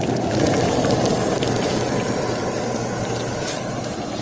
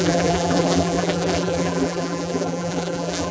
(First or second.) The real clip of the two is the first